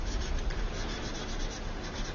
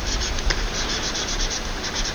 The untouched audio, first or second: first